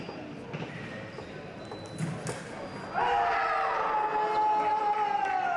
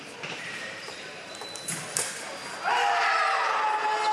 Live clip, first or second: first